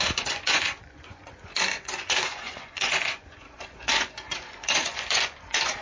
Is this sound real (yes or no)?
no